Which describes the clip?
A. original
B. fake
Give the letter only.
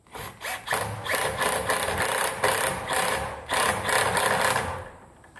A